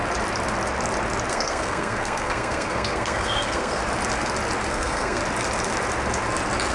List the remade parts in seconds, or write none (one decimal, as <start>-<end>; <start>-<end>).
1.3-3.8; 4.7-5.2